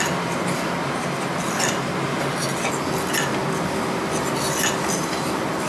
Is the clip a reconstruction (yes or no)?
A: no